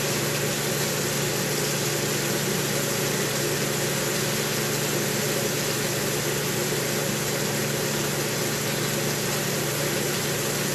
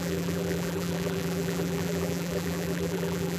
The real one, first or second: first